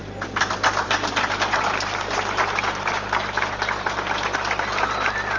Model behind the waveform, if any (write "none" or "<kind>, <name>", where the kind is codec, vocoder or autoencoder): vocoder, BigVGAN v2